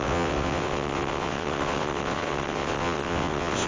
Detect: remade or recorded remade